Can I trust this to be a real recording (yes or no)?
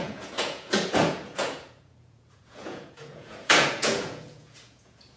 no